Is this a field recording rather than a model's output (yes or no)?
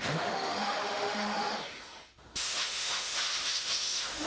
no